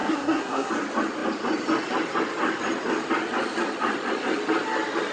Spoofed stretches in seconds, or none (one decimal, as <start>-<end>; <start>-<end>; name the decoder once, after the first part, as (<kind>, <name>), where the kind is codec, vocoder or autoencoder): 0.0-0.7 (codec, SNAC)